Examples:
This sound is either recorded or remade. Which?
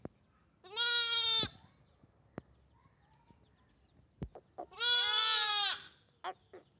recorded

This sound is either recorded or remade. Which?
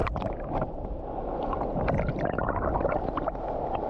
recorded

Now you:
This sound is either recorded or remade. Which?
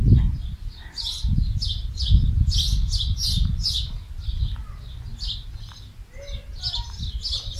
recorded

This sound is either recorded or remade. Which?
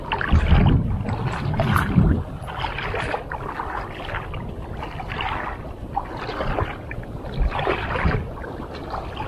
recorded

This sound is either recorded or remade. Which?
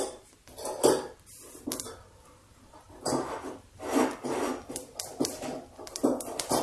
recorded